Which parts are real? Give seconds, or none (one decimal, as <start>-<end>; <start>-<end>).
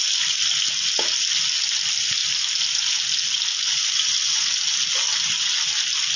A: 0.0-6.2